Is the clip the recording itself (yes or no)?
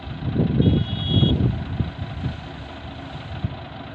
yes